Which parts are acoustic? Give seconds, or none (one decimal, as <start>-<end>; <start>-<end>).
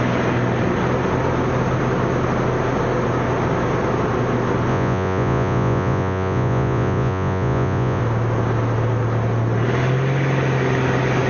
0.0-4.7; 8.0-11.3